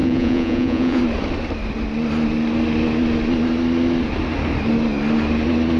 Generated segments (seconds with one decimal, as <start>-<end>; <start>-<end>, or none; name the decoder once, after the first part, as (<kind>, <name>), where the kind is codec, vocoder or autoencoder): 0.0-1.0 (vocoder, Vocos)